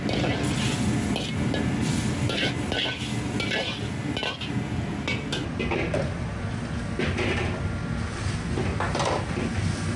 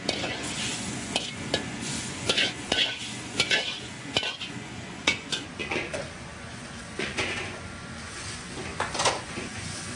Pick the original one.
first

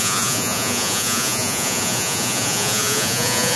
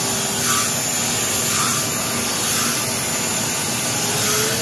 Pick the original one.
second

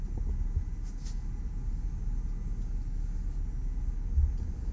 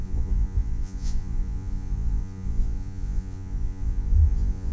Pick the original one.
first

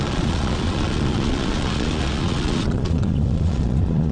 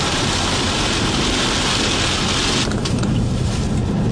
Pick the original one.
second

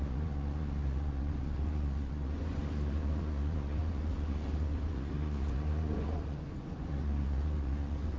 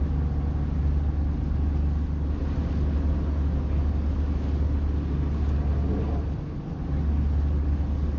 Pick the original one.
second